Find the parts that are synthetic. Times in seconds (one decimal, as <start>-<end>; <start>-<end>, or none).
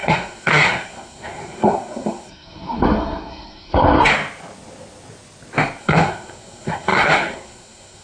0.0-4.1; 5.8-8.0